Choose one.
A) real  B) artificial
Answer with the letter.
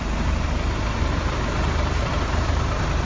B